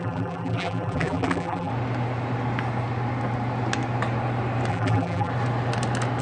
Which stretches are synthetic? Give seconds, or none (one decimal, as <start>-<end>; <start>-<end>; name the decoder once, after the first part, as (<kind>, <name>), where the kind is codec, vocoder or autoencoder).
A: 0.0-1.7 (vocoder, BigVGAN v2); 4.7-5.3